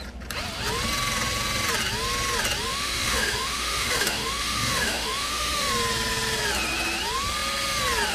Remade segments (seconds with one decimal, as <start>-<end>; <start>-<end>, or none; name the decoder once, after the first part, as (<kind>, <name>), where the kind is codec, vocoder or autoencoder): 2.7-5.7 (autoencoder, DAC-VAE)